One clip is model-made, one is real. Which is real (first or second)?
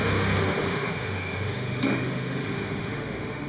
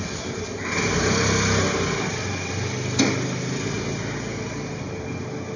second